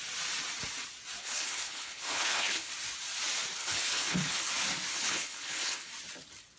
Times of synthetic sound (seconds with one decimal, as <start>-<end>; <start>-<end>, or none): 1.2-2.7; 3.6-4.5; 4.9-5.9